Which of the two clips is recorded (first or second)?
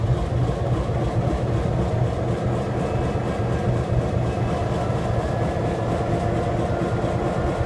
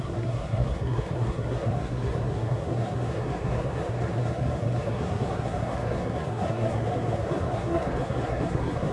first